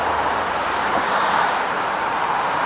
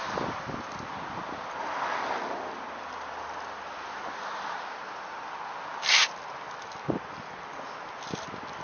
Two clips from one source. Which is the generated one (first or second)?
first